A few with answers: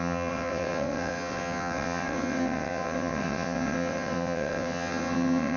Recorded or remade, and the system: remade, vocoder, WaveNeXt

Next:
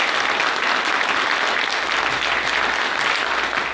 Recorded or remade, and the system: recorded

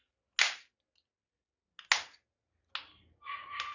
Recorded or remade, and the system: recorded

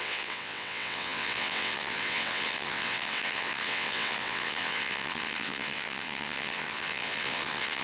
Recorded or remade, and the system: remade, vocoder, WaveNeXt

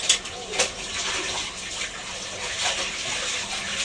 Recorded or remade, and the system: recorded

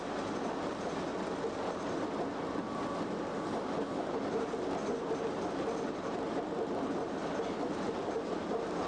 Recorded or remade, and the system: recorded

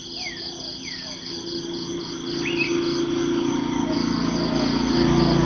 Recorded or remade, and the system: recorded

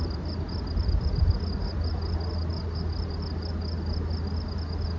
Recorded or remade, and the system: recorded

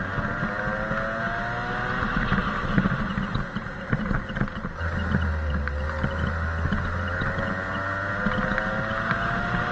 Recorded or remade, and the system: recorded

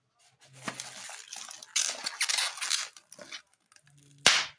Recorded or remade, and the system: recorded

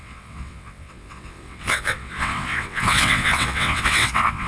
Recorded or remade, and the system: remade, vocoder, WaveNeXt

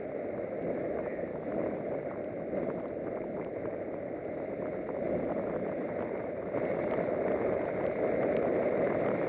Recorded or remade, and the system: recorded